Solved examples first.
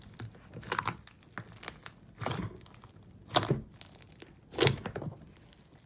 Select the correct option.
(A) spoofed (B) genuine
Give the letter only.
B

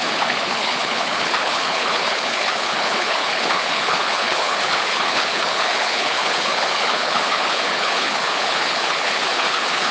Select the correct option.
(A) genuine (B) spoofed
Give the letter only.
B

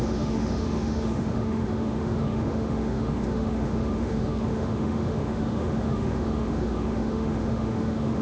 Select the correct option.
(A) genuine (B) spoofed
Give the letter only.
B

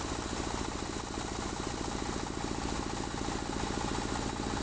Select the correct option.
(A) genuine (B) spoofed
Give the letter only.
A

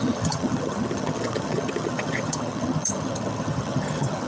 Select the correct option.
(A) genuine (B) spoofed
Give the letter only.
B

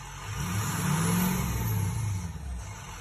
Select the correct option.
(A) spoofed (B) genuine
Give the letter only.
B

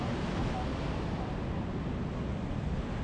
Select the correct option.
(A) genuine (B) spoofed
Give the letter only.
A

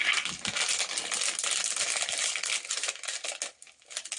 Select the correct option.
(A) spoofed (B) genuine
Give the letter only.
B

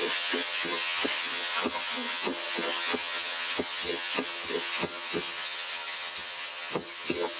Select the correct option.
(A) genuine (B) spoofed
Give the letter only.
B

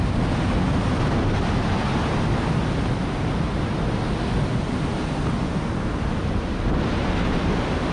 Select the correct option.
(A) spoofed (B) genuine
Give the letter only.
B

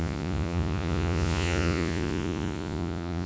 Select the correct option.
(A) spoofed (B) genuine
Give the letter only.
A